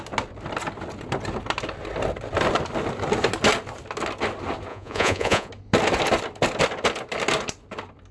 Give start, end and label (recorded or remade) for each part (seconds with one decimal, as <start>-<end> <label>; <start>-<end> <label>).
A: 0.0-4.7 recorded; 4.7-5.5 remade; 5.5-8.1 recorded